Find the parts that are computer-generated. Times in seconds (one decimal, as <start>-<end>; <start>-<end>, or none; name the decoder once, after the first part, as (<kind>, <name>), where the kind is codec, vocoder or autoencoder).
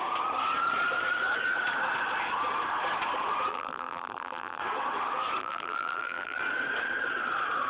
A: 3.5-4.6 (vocoder, BigVGAN v2); 5.4-6.4